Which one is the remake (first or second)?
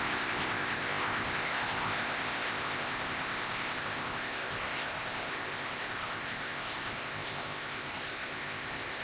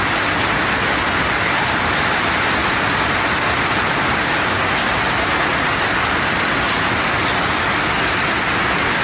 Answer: first